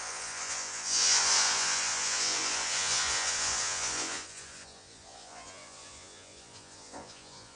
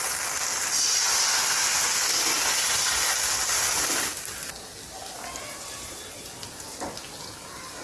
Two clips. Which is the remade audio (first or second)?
first